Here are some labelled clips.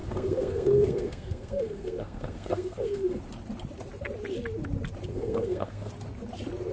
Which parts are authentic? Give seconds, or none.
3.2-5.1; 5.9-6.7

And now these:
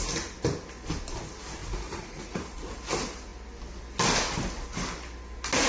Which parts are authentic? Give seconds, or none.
0.0-1.6; 2.4-5.7

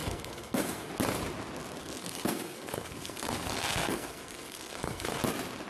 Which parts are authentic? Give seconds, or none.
0.9-1.8; 5.2-5.7

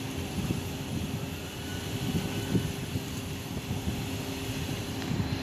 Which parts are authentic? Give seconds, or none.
0.0-5.4

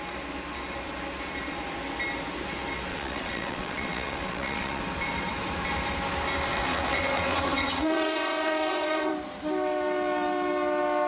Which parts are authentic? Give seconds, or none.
0.0-2.9; 4.8-6.5; 9.1-11.1

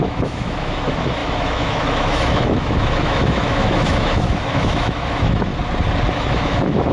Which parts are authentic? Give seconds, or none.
5.5-6.1